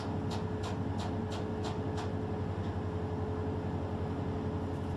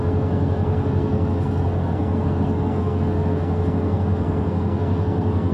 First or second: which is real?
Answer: first